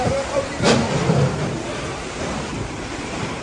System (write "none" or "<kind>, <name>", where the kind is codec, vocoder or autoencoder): vocoder, BigVGAN v2